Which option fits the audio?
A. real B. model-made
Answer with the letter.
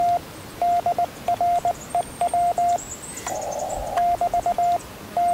A